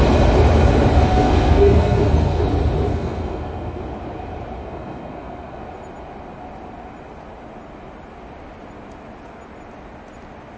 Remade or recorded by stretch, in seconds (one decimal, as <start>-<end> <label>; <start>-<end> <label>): 0.0-1.1 recorded; 1.1-2.4 remade; 2.4-2.9 recorded; 2.9-3.8 remade; 3.8-4.6 recorded; 4.6-5.6 remade; 5.6-10.6 recorded

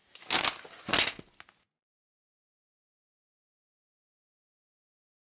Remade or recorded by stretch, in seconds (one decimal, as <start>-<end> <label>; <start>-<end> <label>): 0.0-5.4 recorded

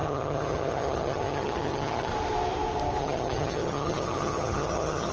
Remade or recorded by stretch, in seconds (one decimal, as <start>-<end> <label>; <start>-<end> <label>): 0.0-2.1 remade; 2.1-3.0 recorded; 3.0-5.1 remade